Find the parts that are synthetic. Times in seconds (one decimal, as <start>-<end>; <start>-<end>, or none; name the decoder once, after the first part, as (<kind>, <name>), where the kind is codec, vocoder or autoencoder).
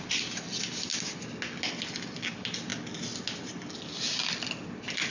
none